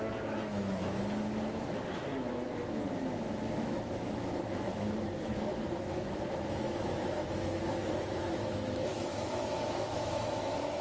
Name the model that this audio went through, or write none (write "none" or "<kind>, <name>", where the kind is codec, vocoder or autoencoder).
autoencoder, DAC-VAE